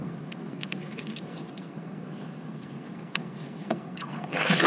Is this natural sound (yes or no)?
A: no